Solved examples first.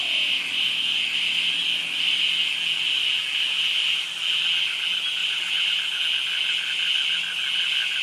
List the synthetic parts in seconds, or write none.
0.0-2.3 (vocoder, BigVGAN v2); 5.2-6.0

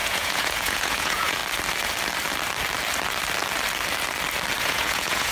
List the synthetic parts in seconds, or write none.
0.0-1.4 (vocoder, Vocos); 4.6-5.3